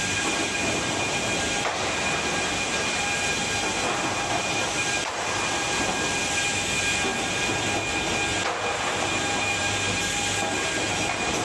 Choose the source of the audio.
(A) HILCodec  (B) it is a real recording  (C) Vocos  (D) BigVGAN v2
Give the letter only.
B